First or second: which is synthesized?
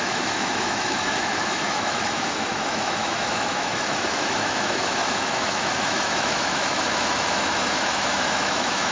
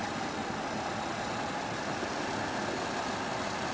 first